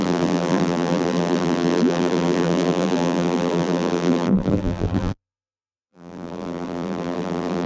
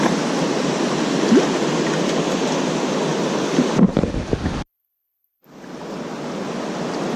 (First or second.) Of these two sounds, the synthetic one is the first